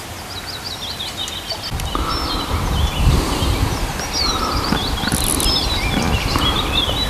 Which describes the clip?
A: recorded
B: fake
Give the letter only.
A